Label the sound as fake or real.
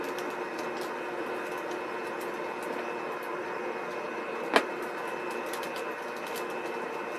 real